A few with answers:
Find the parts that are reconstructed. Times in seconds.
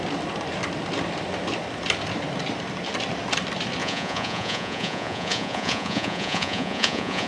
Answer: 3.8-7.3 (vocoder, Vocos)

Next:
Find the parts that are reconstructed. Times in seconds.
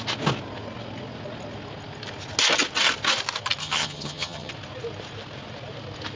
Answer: 3.6-4.5 (vocoder, HiFi-GAN)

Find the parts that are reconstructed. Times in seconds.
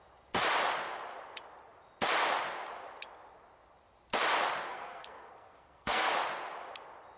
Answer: 4.7-6.1 (codec, SNAC)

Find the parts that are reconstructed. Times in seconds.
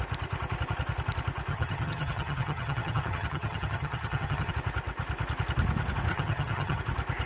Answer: 1.5-4.5 (vocoder, HiFi-GAN); 6.1-6.8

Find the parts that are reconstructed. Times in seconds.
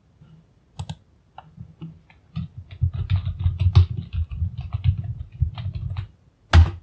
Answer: none